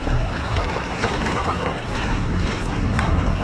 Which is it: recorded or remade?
remade